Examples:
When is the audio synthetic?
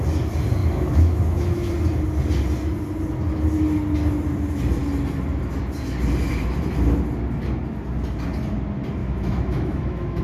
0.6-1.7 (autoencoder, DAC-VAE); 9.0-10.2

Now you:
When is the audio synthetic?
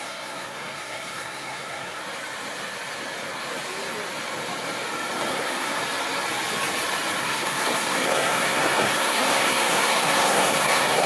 0.0-2.0 (codec, SNAC); 5.3-5.8; 7.2-11.1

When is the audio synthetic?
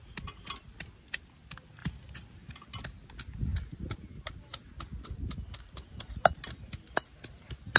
none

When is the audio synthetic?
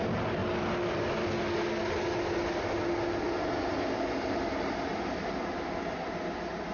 none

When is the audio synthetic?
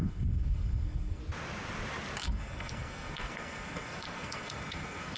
0.0-1.2 (codec, SNAC); 2.2-5.2